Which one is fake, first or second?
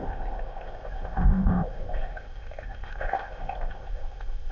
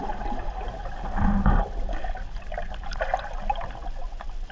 first